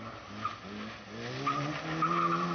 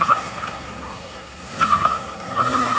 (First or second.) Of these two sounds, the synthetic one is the second